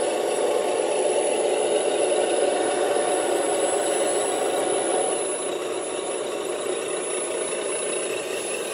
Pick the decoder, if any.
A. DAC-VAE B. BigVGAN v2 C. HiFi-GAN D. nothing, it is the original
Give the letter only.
D